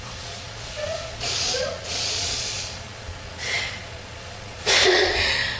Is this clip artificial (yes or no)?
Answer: yes